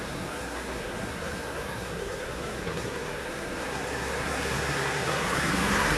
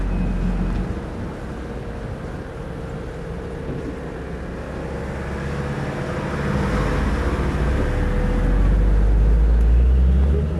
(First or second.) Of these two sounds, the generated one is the first